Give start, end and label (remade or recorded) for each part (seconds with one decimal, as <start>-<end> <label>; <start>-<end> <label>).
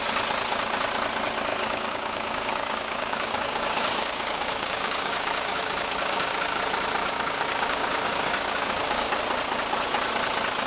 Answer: 0.0-1.5 recorded; 1.5-6.6 remade; 6.6-7.0 recorded; 7.0-9.2 remade; 9.2-10.7 recorded